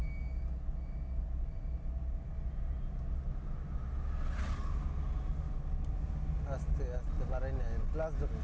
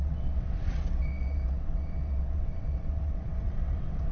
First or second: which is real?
first